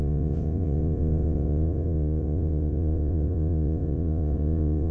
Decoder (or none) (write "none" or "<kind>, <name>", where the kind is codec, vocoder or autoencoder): vocoder, Vocos